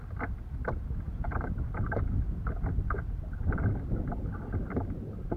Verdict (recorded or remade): recorded